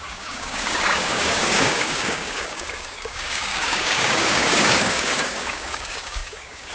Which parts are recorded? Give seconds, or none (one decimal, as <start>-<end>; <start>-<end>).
none